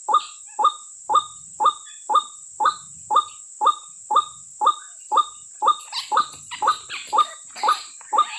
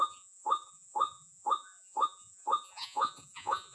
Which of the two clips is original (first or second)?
first